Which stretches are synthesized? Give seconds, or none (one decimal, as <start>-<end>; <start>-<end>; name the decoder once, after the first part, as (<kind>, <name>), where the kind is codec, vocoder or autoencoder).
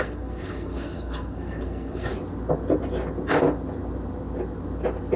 0.0-2.1 (codec, SNAC)